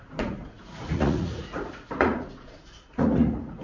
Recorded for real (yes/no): no